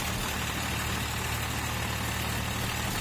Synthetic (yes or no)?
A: no